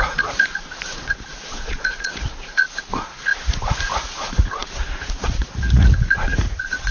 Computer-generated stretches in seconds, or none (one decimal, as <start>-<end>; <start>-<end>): 0.0-6.9